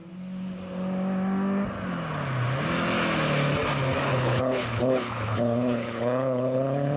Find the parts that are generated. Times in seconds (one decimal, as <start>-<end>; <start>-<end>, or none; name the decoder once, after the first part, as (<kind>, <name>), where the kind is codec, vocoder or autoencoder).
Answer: 4.1-7.0 (codec, HILCodec)